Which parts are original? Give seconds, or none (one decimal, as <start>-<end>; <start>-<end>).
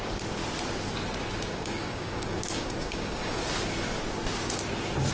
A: 0.4-1.5; 3.4-5.1